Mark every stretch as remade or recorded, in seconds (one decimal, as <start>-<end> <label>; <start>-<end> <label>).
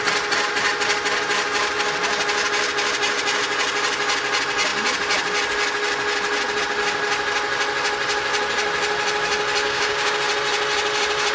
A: 0.0-9.6 recorded; 9.6-10.2 remade; 10.2-11.3 recorded